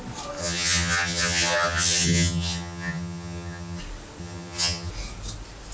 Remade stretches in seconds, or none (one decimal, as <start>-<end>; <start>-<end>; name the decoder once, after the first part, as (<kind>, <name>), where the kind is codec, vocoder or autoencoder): 0.4-3.8 (vocoder, HiFi-GAN); 4.2-4.9